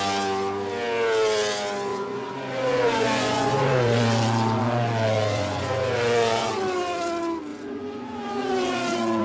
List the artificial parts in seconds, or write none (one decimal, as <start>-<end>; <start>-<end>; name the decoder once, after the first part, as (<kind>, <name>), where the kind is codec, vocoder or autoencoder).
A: 1.9-6.5 (vocoder, Vocos); 7.5-9.2